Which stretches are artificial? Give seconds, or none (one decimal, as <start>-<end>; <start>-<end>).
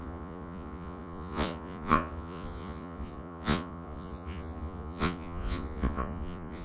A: 0.0-6.6